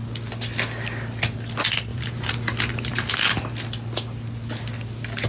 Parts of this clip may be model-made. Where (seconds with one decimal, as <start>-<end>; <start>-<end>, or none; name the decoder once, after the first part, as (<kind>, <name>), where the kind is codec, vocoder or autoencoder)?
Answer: 1.9-3.1 (vocoder, BigVGAN v2)